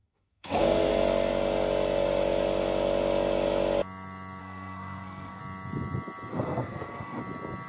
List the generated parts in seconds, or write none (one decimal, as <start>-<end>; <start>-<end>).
0.0-0.9; 4.4-5.4; 6.3-7.2